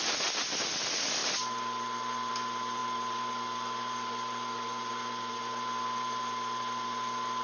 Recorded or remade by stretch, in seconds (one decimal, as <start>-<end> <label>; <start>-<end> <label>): 0.0-7.4 recorded